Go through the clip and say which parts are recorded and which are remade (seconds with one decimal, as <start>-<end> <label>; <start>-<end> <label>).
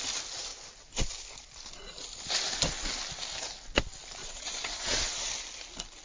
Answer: 0.0-4.2 recorded; 4.2-5.2 remade; 5.2-6.0 recorded